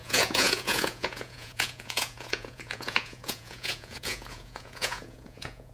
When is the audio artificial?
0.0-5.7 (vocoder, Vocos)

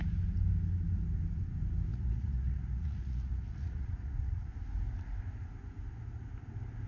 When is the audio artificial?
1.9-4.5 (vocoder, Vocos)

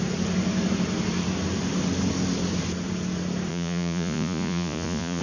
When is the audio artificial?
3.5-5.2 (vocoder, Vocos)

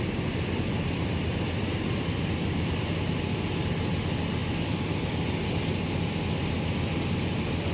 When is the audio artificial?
none

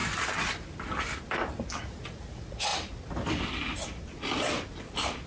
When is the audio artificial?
1.8-2.7 (vocoder, Vocos)

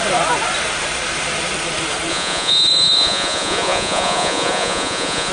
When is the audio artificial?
2.1-5.3 (vocoder, Vocos)